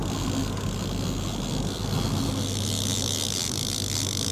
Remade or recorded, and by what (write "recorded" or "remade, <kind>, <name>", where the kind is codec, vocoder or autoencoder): recorded